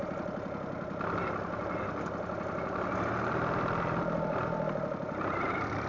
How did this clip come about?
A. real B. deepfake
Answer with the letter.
A